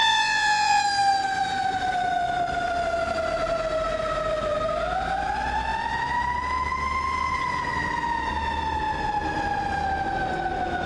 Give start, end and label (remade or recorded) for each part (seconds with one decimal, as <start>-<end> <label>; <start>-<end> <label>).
0.0-0.8 remade; 0.8-10.9 recorded